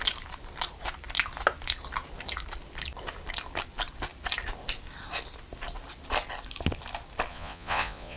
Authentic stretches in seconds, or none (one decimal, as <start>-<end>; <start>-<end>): 0.0-7.3